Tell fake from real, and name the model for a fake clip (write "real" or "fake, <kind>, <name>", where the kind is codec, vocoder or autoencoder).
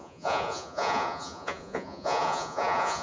fake, vocoder, Vocos